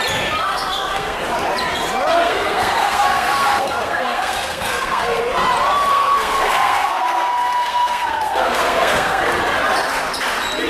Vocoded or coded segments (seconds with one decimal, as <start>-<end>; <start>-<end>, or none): 0.5-1.2; 2.1-5.2; 5.9-9.3